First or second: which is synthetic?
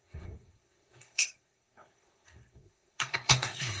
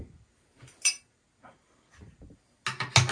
first